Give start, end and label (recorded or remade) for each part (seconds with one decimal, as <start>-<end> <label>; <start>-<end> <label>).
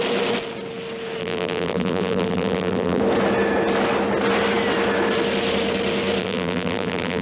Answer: 0.0-1.2 recorded; 1.2-3.0 remade; 3.0-6.2 recorded; 6.2-7.2 remade